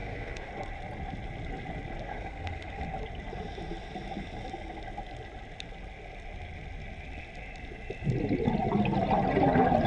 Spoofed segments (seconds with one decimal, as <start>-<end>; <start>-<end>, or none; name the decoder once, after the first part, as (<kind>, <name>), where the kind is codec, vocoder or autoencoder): 0.0-0.5 (codec, SNAC); 2.1-2.8